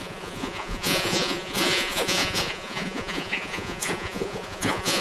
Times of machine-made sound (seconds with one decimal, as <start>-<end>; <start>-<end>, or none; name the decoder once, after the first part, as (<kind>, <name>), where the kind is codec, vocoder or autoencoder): 0.0-5.0 (vocoder, Vocos)